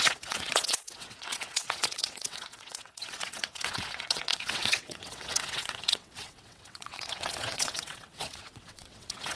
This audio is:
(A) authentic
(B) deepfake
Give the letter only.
B